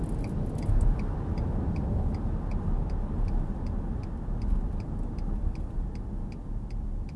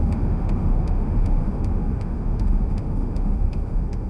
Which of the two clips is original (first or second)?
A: first